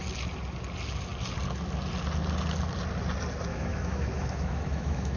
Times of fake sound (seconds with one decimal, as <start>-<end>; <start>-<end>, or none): 3.5-5.2